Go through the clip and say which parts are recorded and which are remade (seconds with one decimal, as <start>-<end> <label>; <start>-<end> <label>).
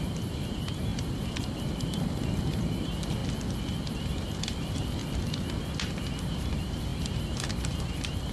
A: 0.0-3.2 remade; 3.2-3.9 recorded; 3.9-5.0 remade; 5.0-5.8 recorded; 5.8-8.3 remade